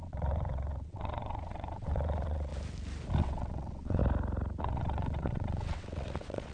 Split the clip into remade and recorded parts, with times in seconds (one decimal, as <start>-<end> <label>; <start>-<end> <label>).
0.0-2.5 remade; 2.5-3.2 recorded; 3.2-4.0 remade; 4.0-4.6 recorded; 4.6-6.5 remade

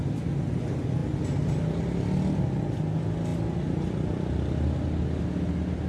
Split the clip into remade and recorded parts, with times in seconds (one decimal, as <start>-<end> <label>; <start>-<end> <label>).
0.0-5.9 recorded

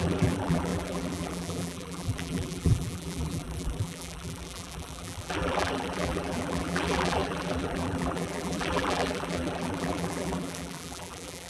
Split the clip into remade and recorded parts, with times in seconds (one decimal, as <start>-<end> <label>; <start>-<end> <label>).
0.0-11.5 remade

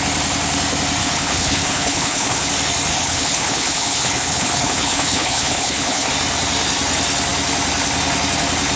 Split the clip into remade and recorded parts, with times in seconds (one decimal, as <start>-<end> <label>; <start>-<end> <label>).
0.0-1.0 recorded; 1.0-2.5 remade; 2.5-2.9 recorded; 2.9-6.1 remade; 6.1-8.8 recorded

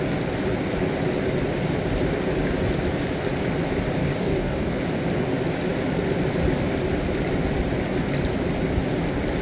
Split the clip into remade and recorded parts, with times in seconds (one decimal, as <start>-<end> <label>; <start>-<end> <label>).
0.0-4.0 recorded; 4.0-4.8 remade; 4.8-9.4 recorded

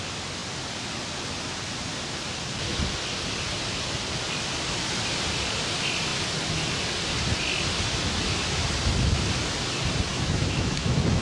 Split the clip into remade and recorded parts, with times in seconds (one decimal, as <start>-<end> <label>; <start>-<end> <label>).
0.0-10.1 recorded; 10.1-11.2 remade